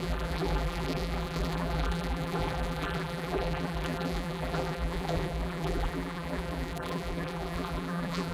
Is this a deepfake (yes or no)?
yes